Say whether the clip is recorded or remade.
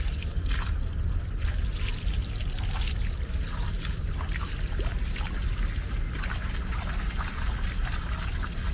recorded